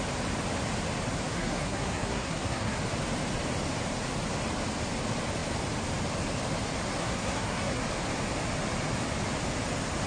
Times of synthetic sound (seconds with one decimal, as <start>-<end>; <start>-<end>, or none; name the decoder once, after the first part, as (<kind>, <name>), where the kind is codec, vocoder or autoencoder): 1.3-2.8 (codec, SNAC); 7.0-7.8